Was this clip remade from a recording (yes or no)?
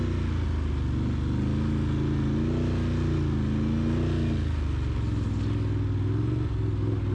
no